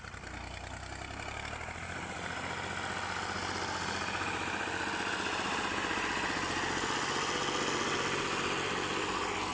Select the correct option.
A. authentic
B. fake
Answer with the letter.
A